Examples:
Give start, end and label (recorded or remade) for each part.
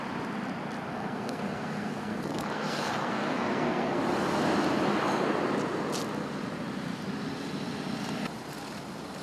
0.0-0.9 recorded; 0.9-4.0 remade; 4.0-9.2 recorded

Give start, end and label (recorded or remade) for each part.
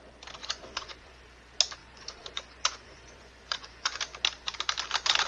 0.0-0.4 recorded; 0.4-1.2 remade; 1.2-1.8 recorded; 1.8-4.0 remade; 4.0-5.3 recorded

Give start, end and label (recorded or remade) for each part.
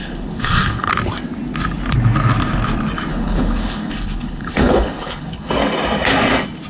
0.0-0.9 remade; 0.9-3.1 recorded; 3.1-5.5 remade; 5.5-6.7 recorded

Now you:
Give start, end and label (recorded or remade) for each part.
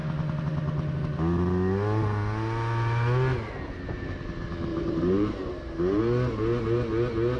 0.0-4.7 recorded; 4.7-6.0 remade; 6.0-7.4 recorded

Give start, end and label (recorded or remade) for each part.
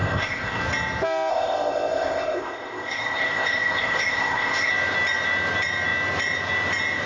0.0-0.6 remade; 0.6-1.3 recorded; 1.3-4.7 remade; 4.7-7.1 recorded